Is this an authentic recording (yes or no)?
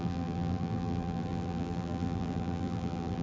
no